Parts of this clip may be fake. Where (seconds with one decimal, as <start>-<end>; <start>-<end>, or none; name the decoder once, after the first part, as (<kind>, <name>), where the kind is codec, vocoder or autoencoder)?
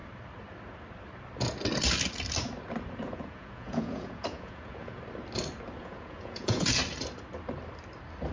2.9-5.0 (vocoder, Vocos); 5.8-6.8